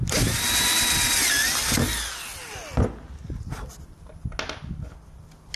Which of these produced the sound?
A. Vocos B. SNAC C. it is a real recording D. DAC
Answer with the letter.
C